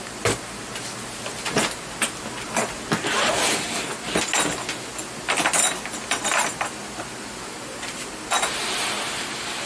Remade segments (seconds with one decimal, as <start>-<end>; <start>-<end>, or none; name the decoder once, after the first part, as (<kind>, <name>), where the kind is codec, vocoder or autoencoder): 0.0-0.7 (vocoder, BigVGAN v2); 3.0-3.9; 7.8-9.7